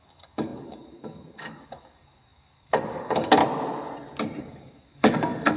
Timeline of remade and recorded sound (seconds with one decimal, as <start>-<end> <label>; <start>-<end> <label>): 0.0-3.4 remade; 3.4-4.4 recorded; 4.4-5.6 remade